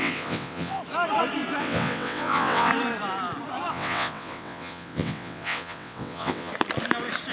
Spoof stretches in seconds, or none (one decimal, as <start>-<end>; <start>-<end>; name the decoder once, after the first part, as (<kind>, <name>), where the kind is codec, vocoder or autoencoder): 0.0-0.8 (vocoder, WaveNeXt); 1.6-2.7; 3.7-6.5